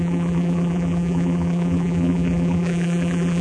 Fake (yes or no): yes